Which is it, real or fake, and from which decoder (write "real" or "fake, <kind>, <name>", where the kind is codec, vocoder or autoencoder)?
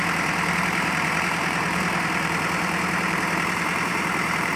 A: fake, vocoder, BigVGAN v2